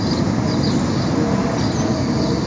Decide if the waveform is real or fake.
real